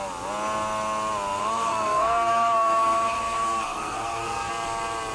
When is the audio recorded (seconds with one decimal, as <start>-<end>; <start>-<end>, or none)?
0.0-1.4; 4.5-5.1